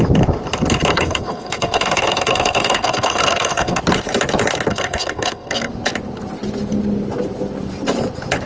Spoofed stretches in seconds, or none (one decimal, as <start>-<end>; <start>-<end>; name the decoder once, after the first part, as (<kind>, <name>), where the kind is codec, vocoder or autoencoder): 0.9-3.8 (codec, SNAC); 4.7-5.7